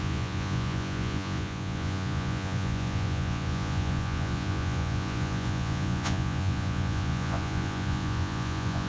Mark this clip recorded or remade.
remade